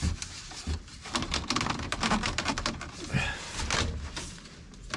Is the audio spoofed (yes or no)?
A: no